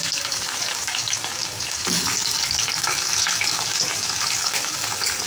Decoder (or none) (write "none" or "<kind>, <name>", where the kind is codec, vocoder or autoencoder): codec, DAC